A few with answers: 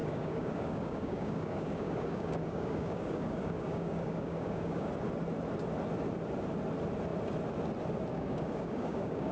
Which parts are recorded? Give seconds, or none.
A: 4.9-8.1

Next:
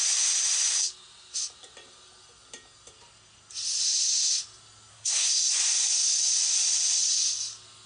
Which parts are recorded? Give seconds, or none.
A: 0.0-4.9; 5.4-7.9

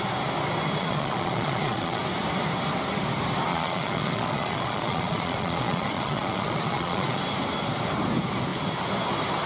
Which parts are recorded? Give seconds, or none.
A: 0.0-0.8; 2.0-3.5; 7.2-9.5

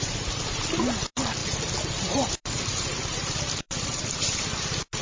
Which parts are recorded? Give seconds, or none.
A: none

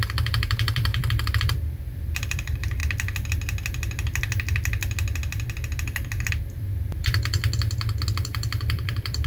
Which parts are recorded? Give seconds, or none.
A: 2.8-6.3; 7.4-8.2

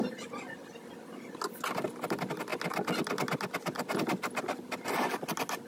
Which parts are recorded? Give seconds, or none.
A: 0.0-5.7